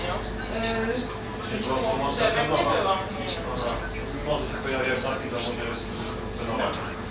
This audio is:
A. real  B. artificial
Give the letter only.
A